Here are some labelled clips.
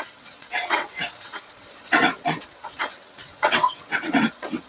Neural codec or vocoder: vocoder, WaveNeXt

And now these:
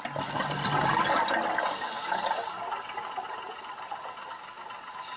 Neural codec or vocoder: none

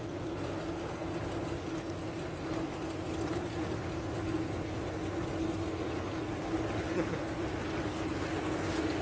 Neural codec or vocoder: none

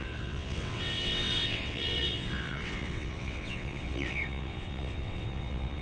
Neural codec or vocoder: vocoder, WaveNeXt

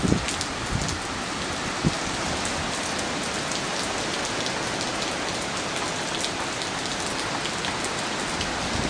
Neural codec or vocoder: none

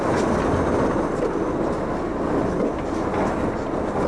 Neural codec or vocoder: none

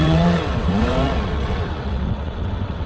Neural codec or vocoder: vocoder, WaveNeXt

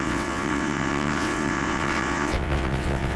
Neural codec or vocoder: vocoder, WaveNeXt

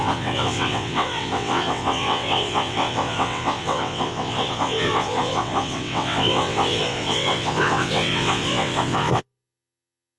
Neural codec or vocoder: vocoder, WaveNeXt